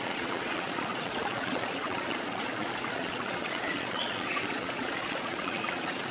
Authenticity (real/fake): fake